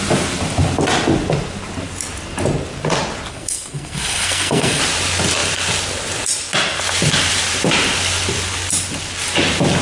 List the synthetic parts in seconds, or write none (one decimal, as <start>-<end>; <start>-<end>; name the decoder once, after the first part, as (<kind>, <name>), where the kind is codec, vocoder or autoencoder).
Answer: 3.3-4.8 (codec, SNAC)